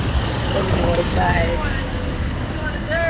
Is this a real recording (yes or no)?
no